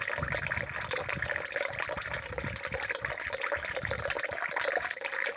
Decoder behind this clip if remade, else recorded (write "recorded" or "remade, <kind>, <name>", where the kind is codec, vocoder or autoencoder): recorded